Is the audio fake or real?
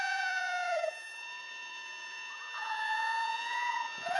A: fake